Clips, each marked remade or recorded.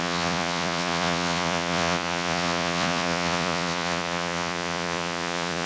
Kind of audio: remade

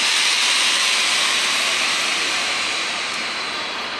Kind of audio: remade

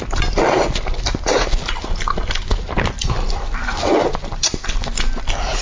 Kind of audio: remade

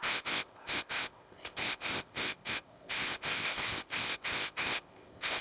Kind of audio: remade